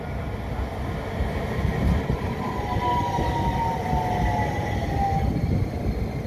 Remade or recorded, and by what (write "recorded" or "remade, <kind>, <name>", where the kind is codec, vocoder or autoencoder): recorded